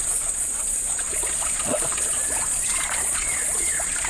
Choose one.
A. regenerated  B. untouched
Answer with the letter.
A